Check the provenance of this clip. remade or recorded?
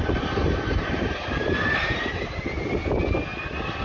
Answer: recorded